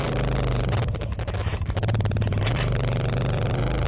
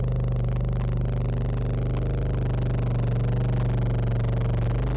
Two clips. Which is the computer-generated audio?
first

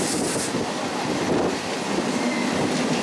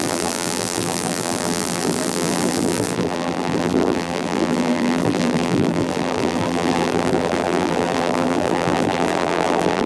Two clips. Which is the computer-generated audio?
second